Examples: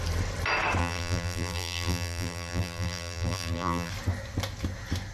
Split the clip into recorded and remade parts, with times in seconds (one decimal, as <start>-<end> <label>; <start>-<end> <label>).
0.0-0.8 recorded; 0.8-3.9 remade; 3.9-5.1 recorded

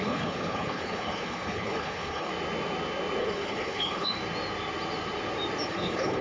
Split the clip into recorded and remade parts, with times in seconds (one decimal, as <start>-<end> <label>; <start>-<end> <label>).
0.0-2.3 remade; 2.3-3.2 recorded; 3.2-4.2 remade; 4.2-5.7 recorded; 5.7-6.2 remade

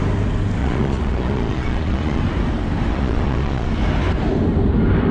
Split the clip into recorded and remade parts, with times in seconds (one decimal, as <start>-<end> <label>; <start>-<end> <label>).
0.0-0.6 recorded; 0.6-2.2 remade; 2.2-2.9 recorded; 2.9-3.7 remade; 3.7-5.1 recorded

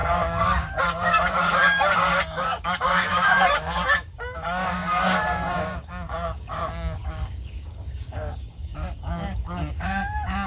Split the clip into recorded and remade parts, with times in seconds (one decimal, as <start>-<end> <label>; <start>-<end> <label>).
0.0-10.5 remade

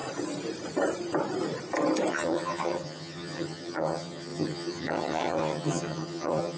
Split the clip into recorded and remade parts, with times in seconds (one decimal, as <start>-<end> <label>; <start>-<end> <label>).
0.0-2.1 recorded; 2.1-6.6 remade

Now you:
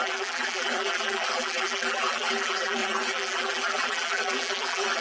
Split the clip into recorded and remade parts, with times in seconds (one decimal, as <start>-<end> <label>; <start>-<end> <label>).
0.0-5.0 remade